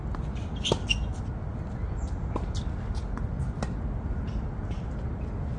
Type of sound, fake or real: real